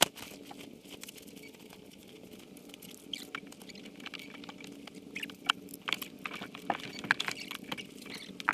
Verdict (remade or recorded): recorded